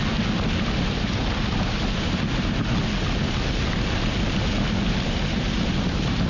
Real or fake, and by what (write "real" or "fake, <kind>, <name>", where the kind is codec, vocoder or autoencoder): real